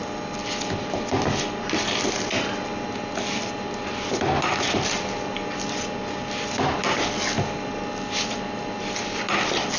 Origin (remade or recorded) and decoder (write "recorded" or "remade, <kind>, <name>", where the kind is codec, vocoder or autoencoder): recorded